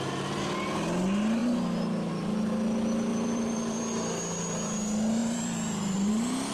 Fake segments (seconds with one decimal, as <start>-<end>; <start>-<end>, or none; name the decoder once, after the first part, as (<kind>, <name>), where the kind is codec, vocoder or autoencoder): 3.1-3.8 (vocoder, BigVGAN v2); 5.2-6.1

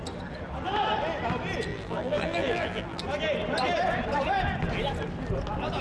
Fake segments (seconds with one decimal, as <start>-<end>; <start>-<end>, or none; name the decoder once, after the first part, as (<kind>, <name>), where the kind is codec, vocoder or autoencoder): 1.7-3.0 (vocoder, BigVGAN v2)

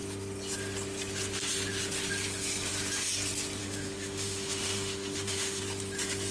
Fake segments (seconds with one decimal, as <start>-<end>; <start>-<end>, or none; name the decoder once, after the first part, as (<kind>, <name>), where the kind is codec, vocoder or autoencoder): 3.6-5.6 (autoencoder, DAC-VAE)

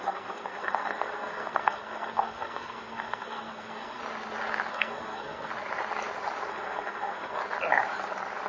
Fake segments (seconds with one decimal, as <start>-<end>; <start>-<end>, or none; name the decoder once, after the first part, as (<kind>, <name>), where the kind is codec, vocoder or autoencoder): 0.0-4.0 (codec, SNAC); 4.7-5.5; 6.5-7.4

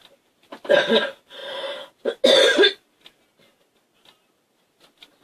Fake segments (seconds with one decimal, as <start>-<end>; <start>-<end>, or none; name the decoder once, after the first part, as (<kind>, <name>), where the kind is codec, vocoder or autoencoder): none